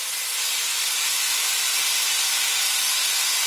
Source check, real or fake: real